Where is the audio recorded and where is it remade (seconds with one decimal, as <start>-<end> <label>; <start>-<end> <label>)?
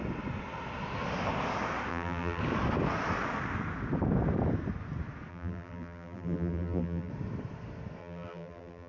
0.0-1.9 recorded; 1.9-2.4 remade; 2.4-5.3 recorded; 5.3-7.1 remade; 7.1-8.0 recorded; 8.0-8.9 remade